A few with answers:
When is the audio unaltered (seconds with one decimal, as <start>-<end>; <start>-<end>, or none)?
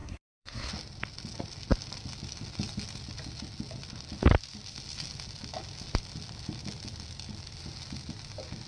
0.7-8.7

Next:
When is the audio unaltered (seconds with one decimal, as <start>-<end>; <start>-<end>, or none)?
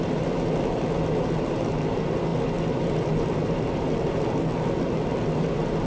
0.0-5.9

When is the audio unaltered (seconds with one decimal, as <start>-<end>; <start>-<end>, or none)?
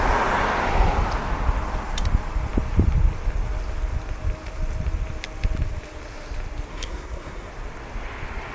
0.0-6.7; 7.5-8.5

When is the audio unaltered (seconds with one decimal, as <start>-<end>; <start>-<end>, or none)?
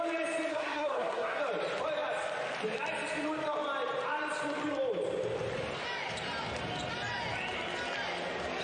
0.0-0.5; 1.4-8.6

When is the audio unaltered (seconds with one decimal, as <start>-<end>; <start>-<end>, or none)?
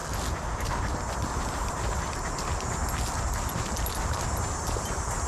0.0-5.3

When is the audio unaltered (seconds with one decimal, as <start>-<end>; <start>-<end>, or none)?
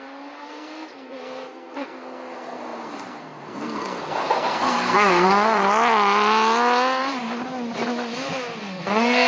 5.6-8.6